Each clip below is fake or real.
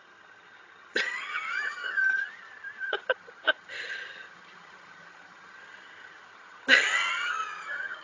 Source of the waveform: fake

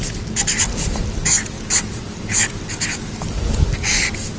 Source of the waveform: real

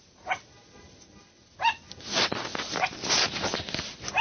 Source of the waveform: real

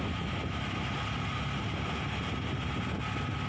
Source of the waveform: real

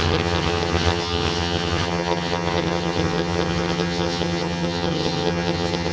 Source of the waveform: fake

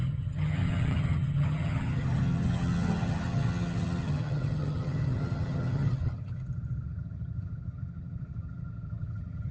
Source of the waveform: fake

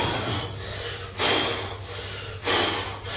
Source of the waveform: real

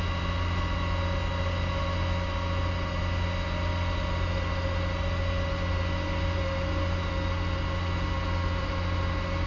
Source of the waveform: real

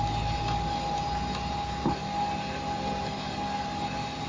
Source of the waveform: real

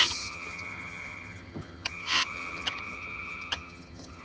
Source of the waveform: fake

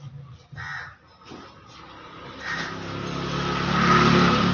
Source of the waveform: real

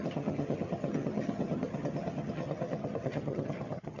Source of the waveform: fake